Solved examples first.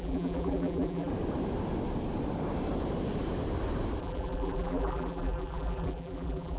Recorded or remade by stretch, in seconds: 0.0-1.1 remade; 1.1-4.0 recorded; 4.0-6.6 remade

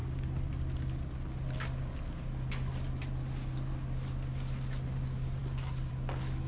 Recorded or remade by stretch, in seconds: 0.0-6.5 recorded

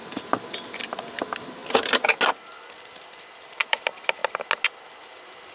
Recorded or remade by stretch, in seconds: 0.0-1.6 remade; 1.6-2.8 recorded; 2.8-4.2 remade; 4.2-5.0 recorded; 5.0-5.5 remade

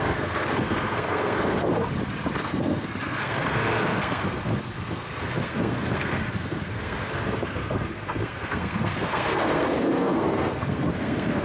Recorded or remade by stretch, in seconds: 0.0-1.8 remade; 1.8-2.4 recorded; 2.4-11.4 remade

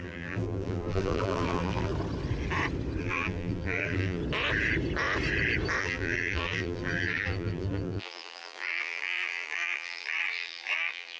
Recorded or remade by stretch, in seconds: 0.0-1.9 remade; 1.9-3.0 recorded; 3.0-4.2 remade; 4.2-5.8 recorded; 5.8-11.2 remade

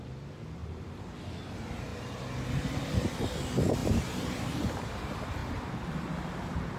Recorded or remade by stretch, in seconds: 0.0-0.6 recorded; 0.6-1.2 remade; 1.2-3.8 recorded; 3.8-4.9 remade; 4.9-6.8 recorded